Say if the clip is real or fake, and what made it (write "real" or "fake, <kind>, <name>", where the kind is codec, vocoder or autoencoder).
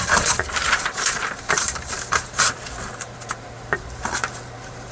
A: fake, vocoder, BigVGAN v2